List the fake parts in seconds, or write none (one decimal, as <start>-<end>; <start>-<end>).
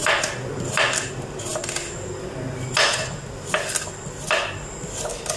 none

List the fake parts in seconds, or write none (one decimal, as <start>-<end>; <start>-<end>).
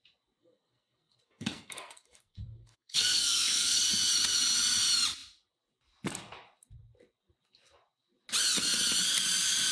0.4-3.8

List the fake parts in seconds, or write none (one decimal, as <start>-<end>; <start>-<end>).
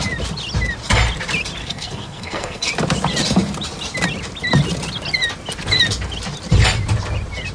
1.6-2.7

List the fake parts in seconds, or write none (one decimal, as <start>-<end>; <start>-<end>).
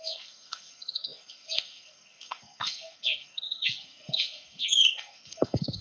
0.0-5.8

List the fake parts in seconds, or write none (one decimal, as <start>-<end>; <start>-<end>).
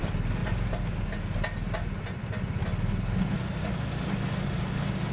none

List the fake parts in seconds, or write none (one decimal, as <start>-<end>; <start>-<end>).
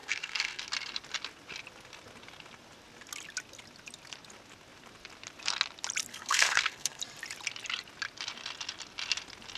0.0-0.7; 6.1-7.0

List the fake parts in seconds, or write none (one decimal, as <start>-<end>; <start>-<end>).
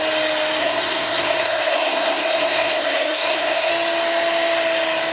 0.6-3.7